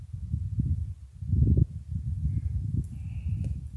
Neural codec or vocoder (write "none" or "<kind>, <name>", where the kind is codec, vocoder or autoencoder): none